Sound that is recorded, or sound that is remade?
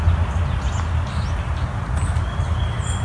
recorded